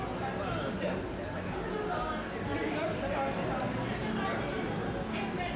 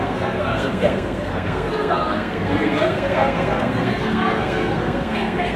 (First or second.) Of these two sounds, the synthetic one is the second